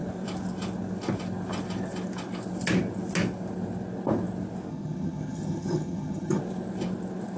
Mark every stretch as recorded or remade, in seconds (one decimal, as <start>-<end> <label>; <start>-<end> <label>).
0.0-4.7 recorded; 4.7-6.4 remade; 6.4-7.4 recorded